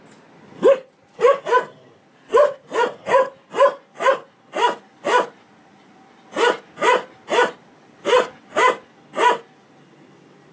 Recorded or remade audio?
recorded